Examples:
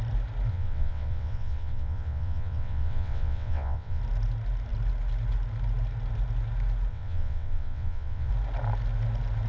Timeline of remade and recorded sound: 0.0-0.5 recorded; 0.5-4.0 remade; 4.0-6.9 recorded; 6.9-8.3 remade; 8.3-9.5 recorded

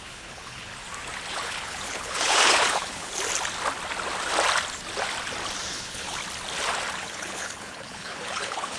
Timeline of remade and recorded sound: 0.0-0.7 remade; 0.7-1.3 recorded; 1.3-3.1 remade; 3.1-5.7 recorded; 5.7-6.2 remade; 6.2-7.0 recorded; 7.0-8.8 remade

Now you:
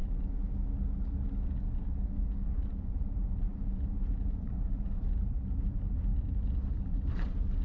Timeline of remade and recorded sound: 0.0-2.4 recorded; 2.4-6.1 remade; 6.1-6.7 recorded; 6.7-7.6 remade

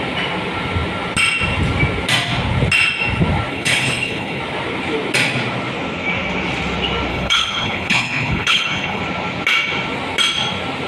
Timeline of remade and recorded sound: 0.0-3.5 recorded; 3.5-4.4 remade; 4.4-7.1 recorded; 7.1-9.0 remade; 9.0-10.9 recorded

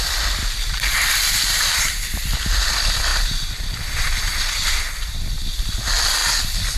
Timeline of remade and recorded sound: 0.0-0.4 recorded; 0.4-2.1 remade; 2.1-6.8 recorded